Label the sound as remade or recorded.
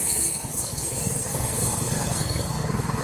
remade